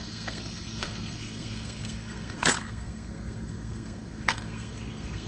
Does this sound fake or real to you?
fake